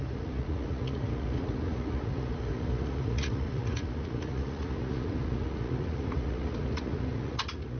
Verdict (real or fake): fake